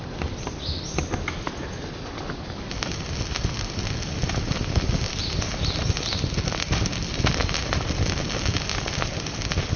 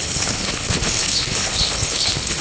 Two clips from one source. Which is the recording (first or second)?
first